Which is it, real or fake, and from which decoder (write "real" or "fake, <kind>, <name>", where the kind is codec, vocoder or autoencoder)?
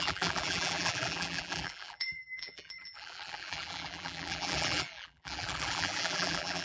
fake, vocoder, BigVGAN v2